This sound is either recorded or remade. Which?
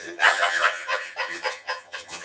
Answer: remade